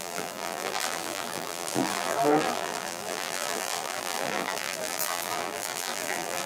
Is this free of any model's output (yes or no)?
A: no